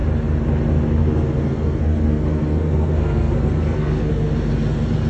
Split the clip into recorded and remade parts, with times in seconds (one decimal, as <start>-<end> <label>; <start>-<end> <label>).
0.0-1.0 recorded; 1.0-4.1 remade; 4.1-5.1 recorded